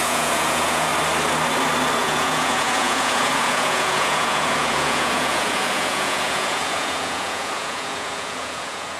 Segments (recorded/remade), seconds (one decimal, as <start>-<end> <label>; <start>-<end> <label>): 0.0-0.9 remade; 0.9-2.0 recorded; 2.0-9.0 remade